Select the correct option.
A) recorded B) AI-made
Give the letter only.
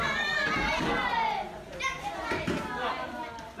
A